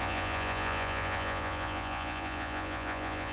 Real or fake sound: fake